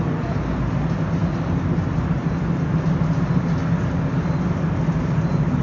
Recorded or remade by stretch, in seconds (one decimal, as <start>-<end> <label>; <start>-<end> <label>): 0.0-5.6 recorded